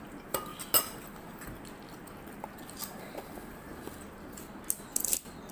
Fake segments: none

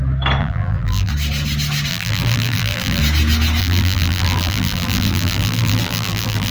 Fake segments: 0.4-1.1 (vocoder, BigVGAN v2); 1.9-3.0; 3.6-6.5

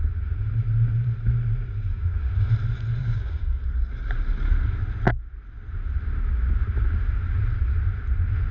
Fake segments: 1.9-2.5 (codec, DAC); 3.0-3.6

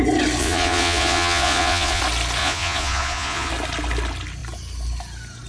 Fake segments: 0.4-2.0 (vocoder, Vocos); 2.4-3.5

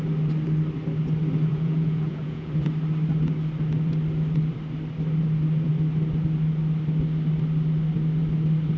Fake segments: 1.5-2.5 (vocoder, Vocos)

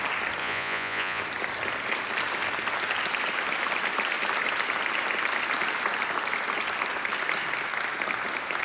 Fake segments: 0.4-1.2 (vocoder, Vocos)

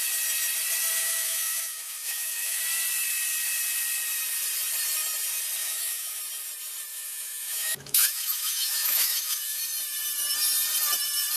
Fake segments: 1.0-2.6 (autoencoder, DAC-VAE); 5.6-6.2; 6.9-9.6

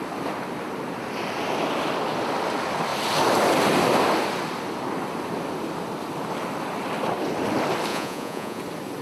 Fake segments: 7.9-8.6 (vocoder, Vocos)